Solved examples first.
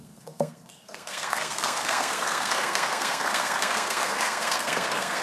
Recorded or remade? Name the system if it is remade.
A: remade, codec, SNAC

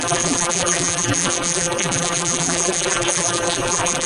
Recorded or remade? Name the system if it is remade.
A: remade, vocoder, BigVGAN v2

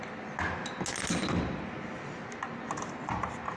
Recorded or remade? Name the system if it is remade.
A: recorded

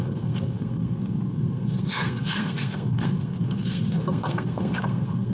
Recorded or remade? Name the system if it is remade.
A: remade, codec, SNAC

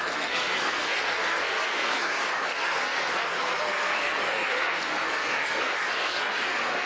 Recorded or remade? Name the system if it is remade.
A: remade, codec, SNAC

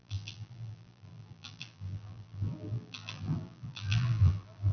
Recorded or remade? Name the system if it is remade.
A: remade, vocoder, BigVGAN v2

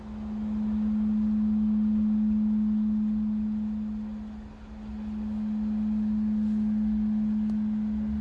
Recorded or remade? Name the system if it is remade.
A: recorded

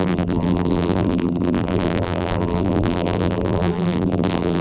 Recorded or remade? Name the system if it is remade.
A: remade, vocoder, BigVGAN v2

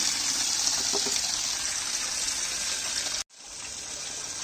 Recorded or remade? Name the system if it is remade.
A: recorded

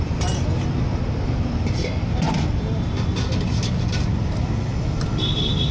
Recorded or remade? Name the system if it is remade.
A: recorded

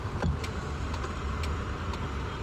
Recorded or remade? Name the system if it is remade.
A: recorded